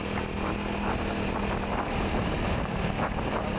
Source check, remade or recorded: recorded